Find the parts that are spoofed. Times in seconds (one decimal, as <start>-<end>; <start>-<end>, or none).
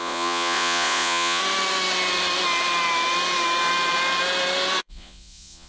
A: 0.0-1.4; 4.8-5.7